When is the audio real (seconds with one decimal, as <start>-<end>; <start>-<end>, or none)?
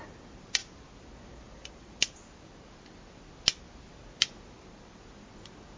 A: 0.0-5.8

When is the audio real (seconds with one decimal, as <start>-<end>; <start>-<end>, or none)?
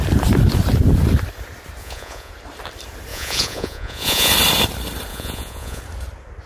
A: 0.0-1.8; 2.3-3.1; 4.3-5.1; 5.8-6.5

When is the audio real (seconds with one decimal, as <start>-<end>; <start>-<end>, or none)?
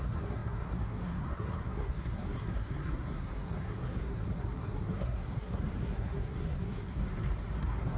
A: 7.0-7.6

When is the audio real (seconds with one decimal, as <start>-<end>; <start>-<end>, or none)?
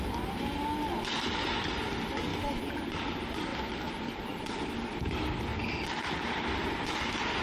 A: 0.0-2.3; 2.9-5.5; 6.5-7.4